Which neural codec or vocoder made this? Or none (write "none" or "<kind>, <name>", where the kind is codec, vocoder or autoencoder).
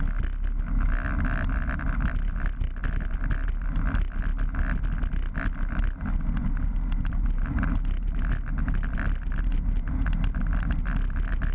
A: none